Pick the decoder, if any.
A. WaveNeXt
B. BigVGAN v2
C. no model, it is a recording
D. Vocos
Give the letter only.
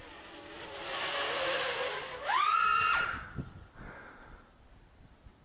C